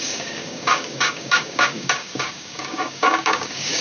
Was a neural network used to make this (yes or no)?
yes